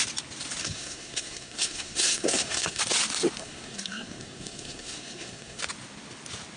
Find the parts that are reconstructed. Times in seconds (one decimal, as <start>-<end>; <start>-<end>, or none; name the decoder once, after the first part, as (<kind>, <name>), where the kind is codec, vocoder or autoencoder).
0.6-2.8 (codec, SNAC); 3.4-5.6